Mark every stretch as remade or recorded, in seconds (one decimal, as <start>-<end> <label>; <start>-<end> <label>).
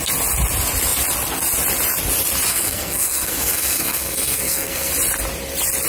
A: 0.0-2.5 recorded; 2.5-4.9 remade; 4.9-5.9 recorded